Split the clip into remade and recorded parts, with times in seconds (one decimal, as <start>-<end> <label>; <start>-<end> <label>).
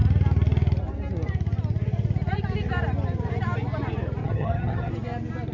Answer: 0.0-4.2 recorded; 4.2-4.9 remade; 4.9-5.5 recorded